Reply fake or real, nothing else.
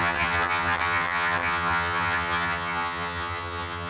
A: fake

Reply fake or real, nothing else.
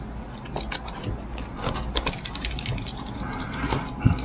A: real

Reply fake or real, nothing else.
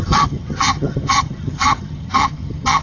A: fake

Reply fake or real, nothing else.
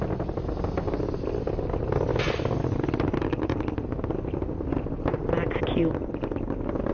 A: real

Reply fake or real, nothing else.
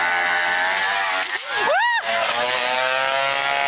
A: real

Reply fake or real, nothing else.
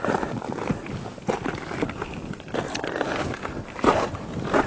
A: real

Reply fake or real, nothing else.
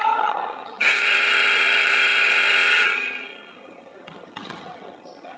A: fake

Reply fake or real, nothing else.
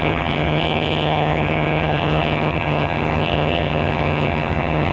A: fake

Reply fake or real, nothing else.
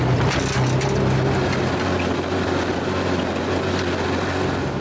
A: real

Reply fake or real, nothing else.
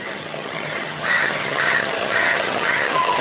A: fake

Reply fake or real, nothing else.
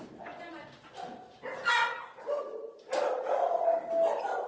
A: real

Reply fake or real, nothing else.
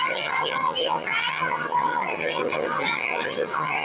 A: fake